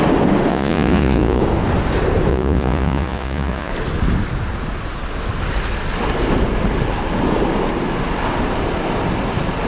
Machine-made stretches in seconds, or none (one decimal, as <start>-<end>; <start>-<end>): 0.5-1.4; 2.3-3.7